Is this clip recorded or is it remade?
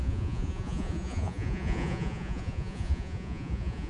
remade